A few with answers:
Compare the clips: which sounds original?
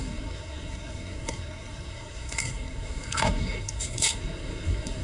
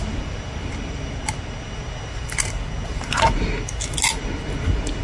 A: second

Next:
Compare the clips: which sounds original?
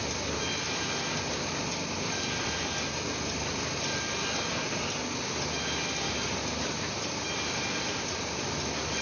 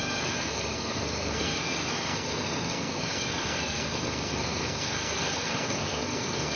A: first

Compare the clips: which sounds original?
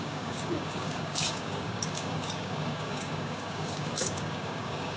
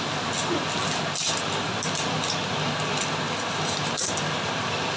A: second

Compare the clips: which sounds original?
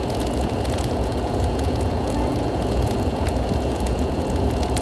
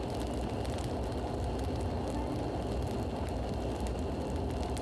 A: second